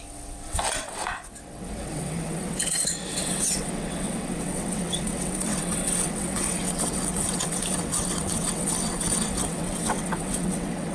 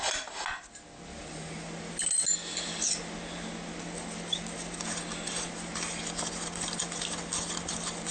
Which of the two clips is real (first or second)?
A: second